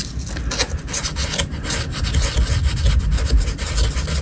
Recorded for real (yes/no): yes